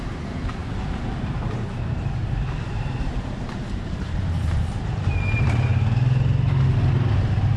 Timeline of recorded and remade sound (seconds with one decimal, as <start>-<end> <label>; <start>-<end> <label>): 0.0-5.7 remade; 5.7-6.9 recorded; 6.9-7.6 remade